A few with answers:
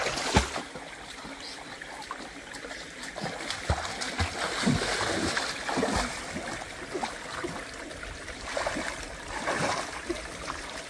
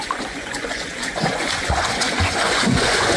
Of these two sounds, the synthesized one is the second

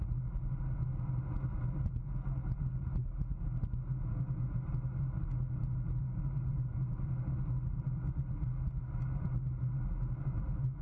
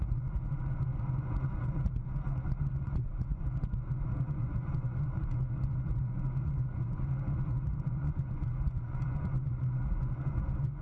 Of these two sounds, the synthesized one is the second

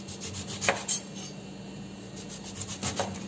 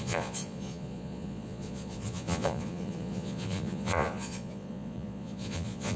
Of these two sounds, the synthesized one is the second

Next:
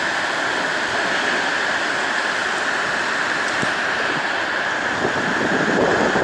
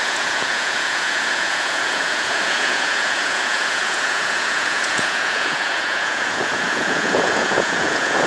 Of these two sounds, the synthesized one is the second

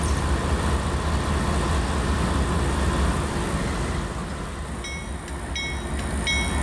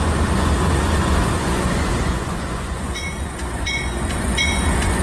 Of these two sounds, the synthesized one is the second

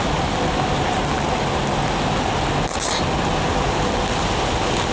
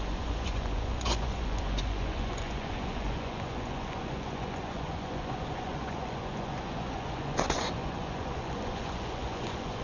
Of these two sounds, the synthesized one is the second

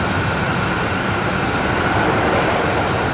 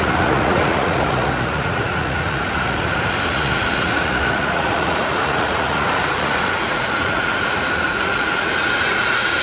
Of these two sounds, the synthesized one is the second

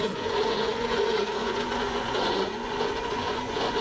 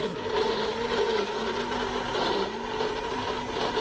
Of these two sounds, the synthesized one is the first